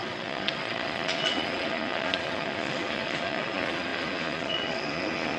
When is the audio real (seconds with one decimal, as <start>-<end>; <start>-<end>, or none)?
none